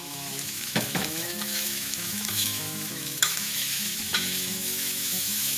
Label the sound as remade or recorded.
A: remade